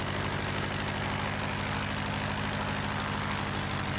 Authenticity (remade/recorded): recorded